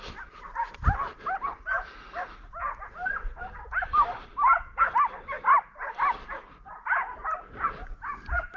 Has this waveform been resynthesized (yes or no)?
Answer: no